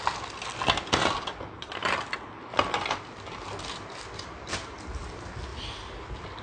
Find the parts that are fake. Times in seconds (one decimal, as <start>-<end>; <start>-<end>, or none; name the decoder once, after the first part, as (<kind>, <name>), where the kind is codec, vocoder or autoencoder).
none